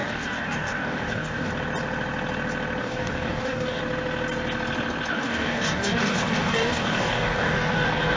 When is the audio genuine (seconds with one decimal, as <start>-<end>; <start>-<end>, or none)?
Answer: 1.5-2.8; 3.8-5.1

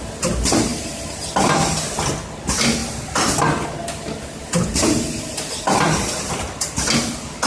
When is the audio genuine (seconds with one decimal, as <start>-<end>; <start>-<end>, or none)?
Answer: 0.0-7.5